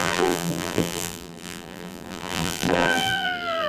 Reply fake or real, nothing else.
fake